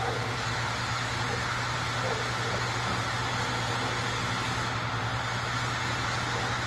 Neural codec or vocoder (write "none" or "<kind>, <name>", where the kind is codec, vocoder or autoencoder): none